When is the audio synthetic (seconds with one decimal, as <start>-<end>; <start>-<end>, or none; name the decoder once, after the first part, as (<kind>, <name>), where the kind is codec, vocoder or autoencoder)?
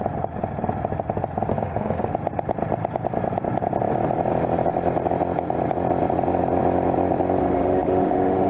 1.5-2.1 (autoencoder, DAC-VAE); 7.4-8.5